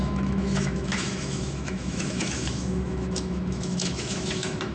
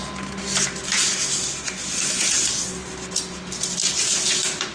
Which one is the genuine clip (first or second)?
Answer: second